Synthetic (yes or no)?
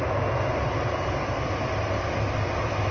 no